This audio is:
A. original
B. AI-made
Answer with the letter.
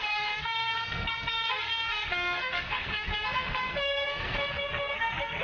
B